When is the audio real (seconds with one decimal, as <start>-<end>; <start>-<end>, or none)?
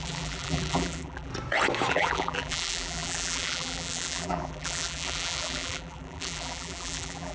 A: 1.3-1.9